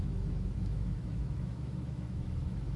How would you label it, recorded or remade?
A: remade